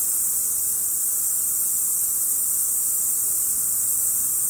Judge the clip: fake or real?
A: real